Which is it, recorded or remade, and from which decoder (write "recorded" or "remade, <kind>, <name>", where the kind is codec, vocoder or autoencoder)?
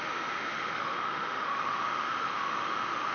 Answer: remade, autoencoder, DAC-VAE